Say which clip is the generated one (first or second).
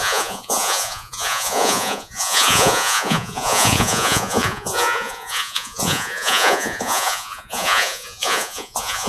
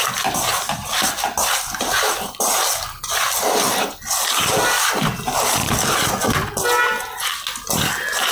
first